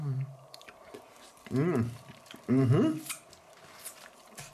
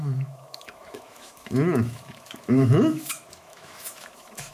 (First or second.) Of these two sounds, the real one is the first